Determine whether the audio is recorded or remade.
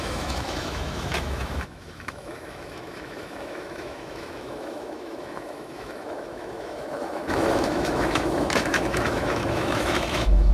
remade